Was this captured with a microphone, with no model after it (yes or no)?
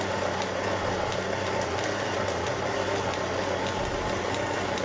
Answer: yes